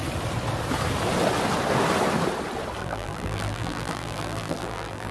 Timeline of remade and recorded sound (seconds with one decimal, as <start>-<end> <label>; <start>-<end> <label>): 0.0-2.8 recorded; 2.8-5.1 remade